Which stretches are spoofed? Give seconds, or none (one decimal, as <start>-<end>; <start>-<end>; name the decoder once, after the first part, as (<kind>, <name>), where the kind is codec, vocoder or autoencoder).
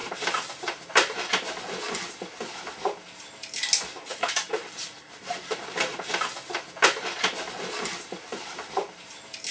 0.0-1.3 (vocoder, BigVGAN v2); 4.1-6.1; 8.3-9.1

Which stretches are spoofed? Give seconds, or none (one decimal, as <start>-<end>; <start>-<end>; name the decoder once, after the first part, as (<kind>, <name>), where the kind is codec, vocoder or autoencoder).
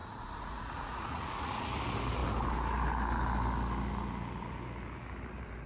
0.0-1.7 (vocoder, Vocos)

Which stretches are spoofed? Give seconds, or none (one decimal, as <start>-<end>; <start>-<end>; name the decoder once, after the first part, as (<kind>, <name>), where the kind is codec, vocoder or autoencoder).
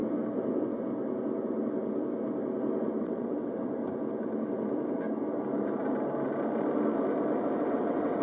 0.5-0.9 (vocoder, WaveNeXt); 3.0-3.8; 7.7-8.2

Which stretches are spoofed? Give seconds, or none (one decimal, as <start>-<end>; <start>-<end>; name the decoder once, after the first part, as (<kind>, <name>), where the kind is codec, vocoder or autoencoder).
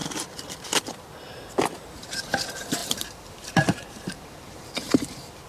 1.9-5.5 (vocoder, BigVGAN v2)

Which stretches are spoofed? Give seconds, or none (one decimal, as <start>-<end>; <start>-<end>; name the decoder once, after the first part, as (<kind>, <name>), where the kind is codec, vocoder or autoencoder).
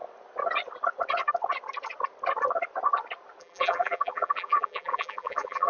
3.4-5.7 (vocoder, BigVGAN v2)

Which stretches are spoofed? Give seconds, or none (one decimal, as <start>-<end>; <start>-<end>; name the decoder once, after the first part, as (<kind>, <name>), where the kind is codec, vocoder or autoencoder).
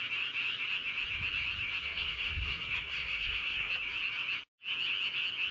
1.8-3.7 (codec, SNAC)